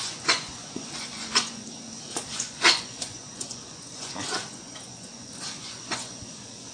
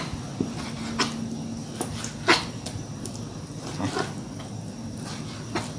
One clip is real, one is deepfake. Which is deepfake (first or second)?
first